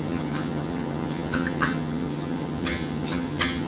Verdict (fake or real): fake